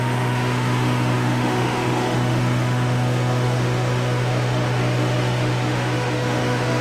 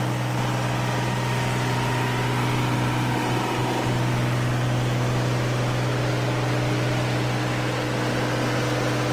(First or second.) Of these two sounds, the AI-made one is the first